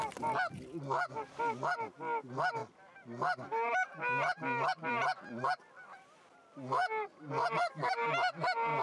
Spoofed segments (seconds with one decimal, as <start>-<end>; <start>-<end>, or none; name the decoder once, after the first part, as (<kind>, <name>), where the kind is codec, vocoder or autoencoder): none